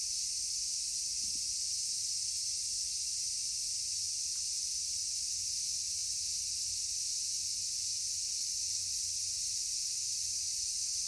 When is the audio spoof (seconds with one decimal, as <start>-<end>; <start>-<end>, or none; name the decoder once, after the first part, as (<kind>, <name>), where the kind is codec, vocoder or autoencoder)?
none

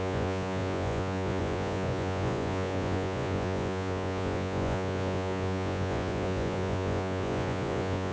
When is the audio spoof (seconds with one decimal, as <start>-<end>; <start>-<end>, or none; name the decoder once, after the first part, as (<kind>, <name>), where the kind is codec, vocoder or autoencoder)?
0.0-8.1 (vocoder, Vocos)

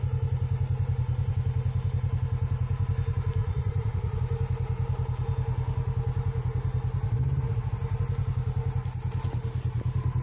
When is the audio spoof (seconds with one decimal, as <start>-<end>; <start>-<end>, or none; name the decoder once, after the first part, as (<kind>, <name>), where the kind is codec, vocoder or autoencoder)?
3.4-4.2 (vocoder, Vocos)

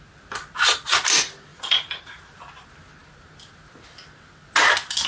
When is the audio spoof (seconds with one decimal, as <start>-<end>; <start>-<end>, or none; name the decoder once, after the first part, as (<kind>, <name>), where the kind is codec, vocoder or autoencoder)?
1.5-2.2 (vocoder, Vocos)